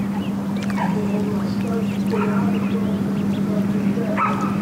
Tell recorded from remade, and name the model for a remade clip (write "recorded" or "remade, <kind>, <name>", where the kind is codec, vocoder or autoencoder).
recorded